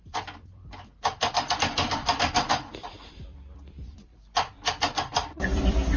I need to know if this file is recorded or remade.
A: remade